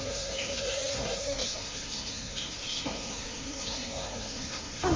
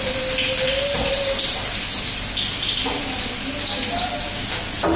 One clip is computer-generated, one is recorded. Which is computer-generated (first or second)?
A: first